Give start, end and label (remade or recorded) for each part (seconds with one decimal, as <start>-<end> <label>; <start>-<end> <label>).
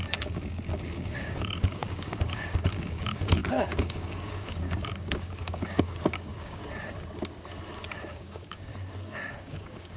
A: 0.0-6.6 remade; 6.6-8.1 recorded; 8.1-8.7 remade; 8.7-9.3 recorded; 9.3-10.0 remade